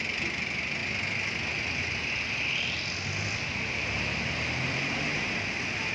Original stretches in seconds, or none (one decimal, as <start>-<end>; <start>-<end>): 0.0-5.9